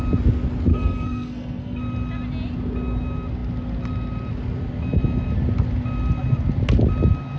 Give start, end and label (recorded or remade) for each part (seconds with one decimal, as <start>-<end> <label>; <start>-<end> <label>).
0.0-0.7 recorded; 0.7-1.8 remade; 1.8-7.4 recorded

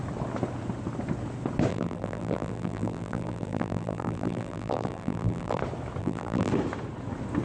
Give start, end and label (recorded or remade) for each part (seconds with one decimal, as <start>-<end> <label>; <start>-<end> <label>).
0.0-1.7 recorded; 1.7-5.6 remade; 5.6-6.0 recorded; 6.0-6.5 remade; 6.5-7.4 recorded

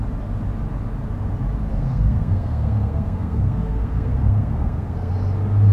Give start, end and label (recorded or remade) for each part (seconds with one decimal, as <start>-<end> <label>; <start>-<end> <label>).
0.0-1.7 recorded; 1.7-5.1 remade; 5.1-5.7 recorded

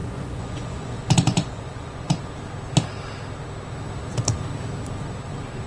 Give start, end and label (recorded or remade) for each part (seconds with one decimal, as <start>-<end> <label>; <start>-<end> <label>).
0.0-2.2 remade; 2.2-5.7 recorded

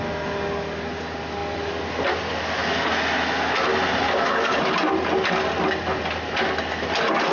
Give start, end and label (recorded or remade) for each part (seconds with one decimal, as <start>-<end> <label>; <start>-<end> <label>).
0.0-7.3 recorded